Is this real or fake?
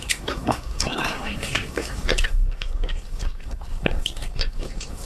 fake